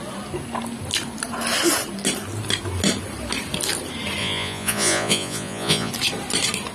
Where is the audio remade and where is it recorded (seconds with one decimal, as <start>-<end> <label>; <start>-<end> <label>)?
0.0-4.2 recorded; 4.2-5.9 remade; 5.9-6.7 recorded